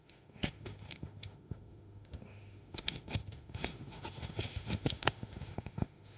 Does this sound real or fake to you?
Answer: fake